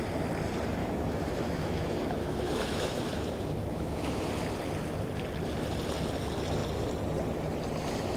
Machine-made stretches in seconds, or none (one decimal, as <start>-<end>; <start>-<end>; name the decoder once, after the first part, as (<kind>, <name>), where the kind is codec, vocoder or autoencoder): 0.8-4.3 (autoencoder, DAC-VAE)